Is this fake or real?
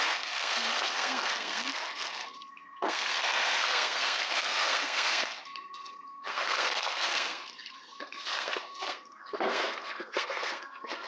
fake